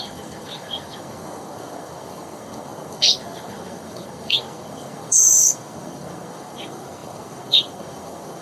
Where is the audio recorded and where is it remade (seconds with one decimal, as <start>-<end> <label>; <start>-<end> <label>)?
0.0-8.4 remade